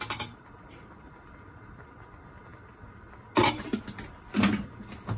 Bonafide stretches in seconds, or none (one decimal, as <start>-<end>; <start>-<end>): 0.0-5.2